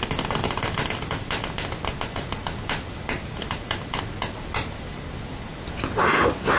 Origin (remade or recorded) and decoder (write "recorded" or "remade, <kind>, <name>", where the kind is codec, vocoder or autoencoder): recorded